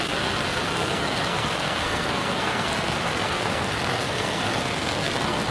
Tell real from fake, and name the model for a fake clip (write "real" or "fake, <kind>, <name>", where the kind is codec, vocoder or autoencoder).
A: fake, codec, SNAC